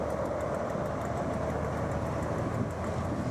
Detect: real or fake real